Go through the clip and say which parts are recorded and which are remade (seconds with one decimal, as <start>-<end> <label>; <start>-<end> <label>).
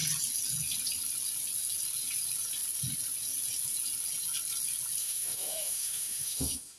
0.0-5.0 recorded; 5.0-6.8 remade